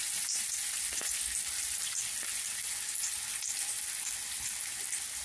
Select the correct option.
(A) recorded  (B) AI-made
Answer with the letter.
A